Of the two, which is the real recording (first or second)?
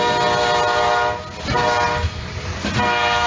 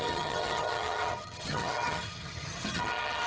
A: first